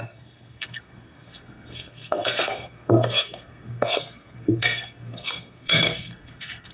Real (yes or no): no